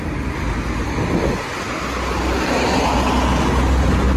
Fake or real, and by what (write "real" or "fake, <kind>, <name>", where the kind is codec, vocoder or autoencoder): real